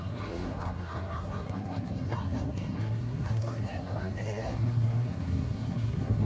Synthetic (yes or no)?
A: yes